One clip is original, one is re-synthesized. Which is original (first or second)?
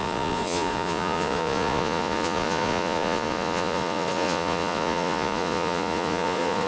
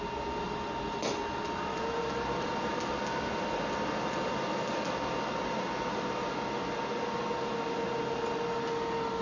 second